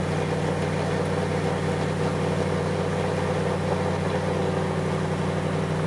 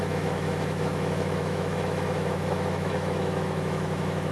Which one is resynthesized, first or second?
second